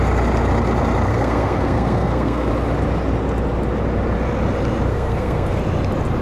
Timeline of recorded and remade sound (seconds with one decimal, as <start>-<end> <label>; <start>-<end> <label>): 0.0-1.1 recorded; 1.1-2.5 remade; 2.5-4.9 recorded; 4.9-5.6 remade; 5.6-6.2 recorded